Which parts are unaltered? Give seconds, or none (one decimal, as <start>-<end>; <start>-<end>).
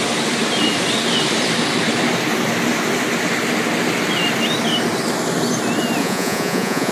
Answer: 0.0-6.0